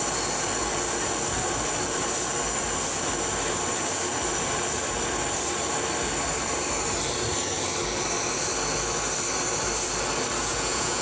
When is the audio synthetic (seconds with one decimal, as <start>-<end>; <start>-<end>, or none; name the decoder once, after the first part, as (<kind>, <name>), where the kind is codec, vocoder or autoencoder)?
10.4-11.0 (vocoder, Vocos)